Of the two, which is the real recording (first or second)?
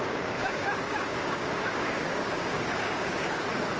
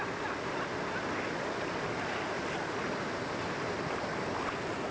second